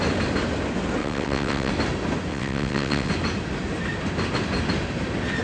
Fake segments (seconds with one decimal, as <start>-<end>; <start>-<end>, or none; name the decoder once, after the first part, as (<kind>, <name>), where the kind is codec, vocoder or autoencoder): 1.0-1.7 (vocoder, WaveNeXt); 2.3-3.1